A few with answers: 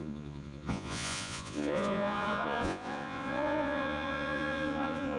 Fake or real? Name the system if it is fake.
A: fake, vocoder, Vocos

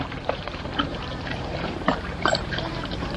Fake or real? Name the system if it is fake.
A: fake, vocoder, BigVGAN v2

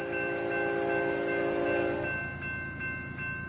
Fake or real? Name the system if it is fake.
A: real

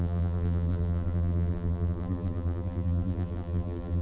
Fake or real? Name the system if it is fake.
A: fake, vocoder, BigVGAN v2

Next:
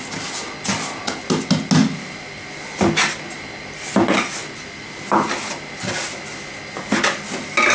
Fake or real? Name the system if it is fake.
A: real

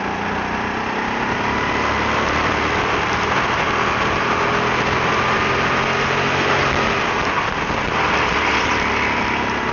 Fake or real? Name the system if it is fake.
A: real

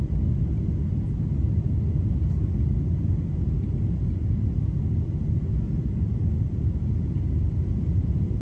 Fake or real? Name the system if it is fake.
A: real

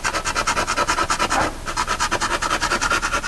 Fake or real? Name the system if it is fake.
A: real